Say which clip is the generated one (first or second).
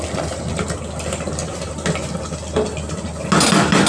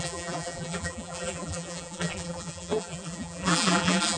second